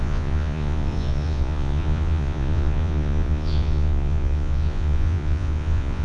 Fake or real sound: fake